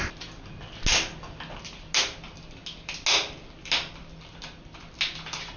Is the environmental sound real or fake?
real